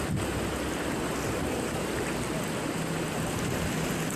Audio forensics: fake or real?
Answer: real